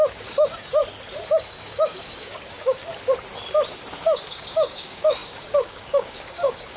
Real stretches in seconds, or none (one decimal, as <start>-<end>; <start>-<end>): 0.8-1.5; 2.9-4.3